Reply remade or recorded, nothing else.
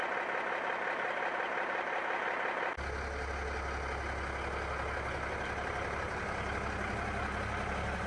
recorded